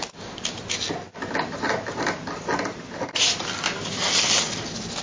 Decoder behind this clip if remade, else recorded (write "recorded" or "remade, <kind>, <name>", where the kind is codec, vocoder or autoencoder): recorded